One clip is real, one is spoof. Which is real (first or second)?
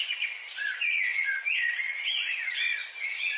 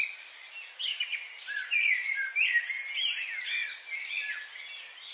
second